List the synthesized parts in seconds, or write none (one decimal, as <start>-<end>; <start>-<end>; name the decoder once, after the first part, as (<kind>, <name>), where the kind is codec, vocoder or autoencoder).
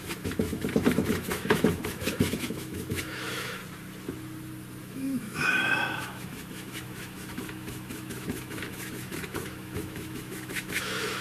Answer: 0.0-3.6 (autoencoder, DAC-VAE); 4.8-11.2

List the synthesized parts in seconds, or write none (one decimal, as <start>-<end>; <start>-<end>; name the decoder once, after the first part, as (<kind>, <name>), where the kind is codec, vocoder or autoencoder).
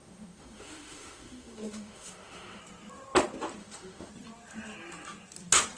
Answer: 0.0-2.6 (autoencoder, DAC-VAE); 3.6-4.1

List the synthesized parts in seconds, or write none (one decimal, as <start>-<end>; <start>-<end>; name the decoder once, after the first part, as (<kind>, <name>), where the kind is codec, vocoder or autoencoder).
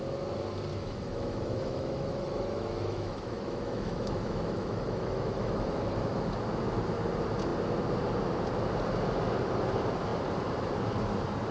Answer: 0.7-5.9 (autoencoder, DAC-VAE)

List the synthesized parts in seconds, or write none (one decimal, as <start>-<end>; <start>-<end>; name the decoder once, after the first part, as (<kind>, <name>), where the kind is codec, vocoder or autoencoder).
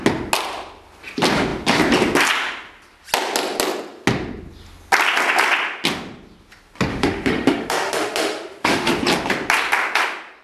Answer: 6.9-8.9 (autoencoder, DAC-VAE)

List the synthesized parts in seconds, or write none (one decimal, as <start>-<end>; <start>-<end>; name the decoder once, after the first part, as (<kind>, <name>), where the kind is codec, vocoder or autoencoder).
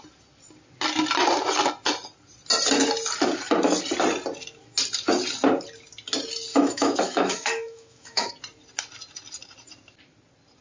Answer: 6.5-8.3 (autoencoder, DAC-VAE)